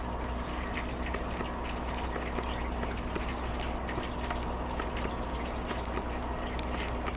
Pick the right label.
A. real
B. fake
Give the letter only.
A